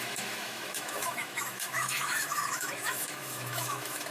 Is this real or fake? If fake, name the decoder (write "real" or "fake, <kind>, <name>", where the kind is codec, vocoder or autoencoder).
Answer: fake, autoencoder, DAC-VAE